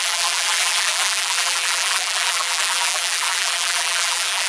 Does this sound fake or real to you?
fake